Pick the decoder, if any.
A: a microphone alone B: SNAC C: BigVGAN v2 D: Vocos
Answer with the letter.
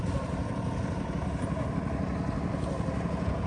A